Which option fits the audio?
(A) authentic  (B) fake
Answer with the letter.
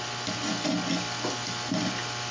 A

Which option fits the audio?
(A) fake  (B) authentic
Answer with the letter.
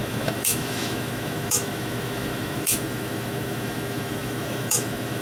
A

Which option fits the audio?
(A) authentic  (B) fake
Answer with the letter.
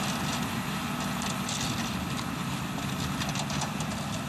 A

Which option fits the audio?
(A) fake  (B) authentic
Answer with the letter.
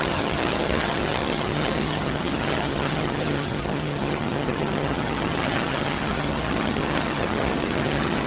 A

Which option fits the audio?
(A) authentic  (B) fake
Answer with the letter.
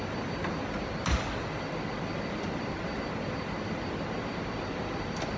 A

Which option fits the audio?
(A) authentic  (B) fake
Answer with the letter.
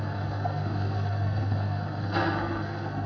B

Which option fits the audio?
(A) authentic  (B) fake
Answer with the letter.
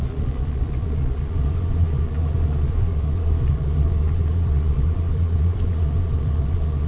B